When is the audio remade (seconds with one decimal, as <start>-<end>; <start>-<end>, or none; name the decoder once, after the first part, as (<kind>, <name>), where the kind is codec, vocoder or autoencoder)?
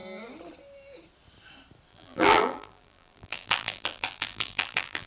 1.9-5.1 (vocoder, BigVGAN v2)